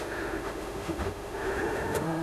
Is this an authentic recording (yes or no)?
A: no